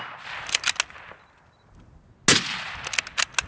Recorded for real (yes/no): yes